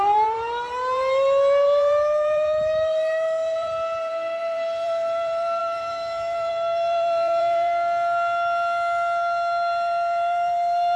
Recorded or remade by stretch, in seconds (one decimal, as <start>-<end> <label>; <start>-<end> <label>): 0.0-11.0 remade